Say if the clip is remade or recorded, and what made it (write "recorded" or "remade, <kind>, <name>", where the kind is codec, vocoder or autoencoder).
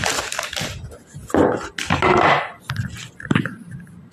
recorded